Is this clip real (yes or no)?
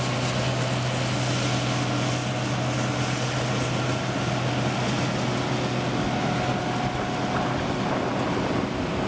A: yes